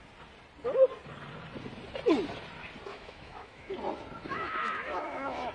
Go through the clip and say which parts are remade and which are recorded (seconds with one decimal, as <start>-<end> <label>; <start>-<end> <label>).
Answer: 0.0-2.9 recorded; 2.9-3.7 remade; 3.7-4.2 recorded; 4.2-5.5 remade